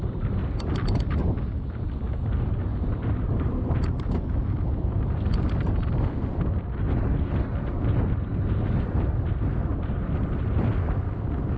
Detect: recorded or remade recorded